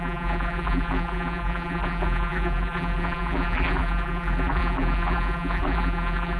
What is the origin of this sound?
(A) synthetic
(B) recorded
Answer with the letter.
A